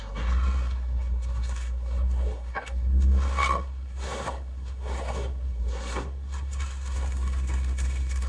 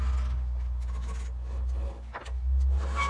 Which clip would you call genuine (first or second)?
second